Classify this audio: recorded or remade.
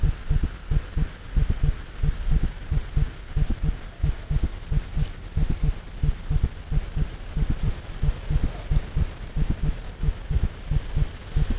recorded